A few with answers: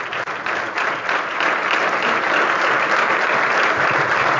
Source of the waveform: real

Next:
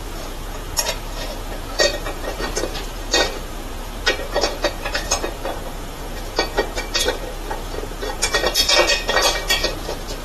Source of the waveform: fake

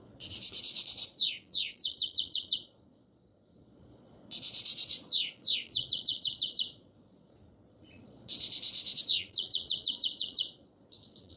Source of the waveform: fake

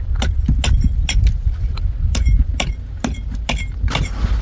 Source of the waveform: real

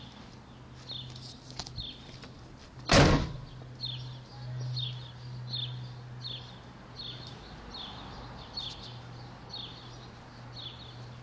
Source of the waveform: real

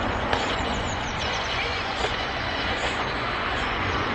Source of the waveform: fake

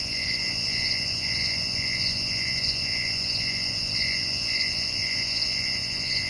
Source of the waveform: fake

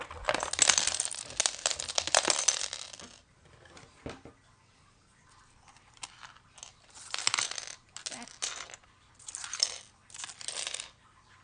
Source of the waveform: real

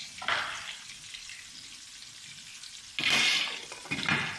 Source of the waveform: real